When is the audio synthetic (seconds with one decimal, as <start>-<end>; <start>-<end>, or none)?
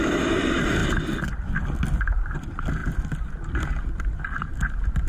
0.8-1.6